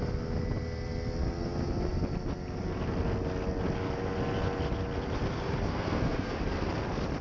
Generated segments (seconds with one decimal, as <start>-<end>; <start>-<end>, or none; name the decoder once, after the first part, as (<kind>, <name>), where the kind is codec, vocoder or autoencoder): 5.7-6.4 (codec, SNAC)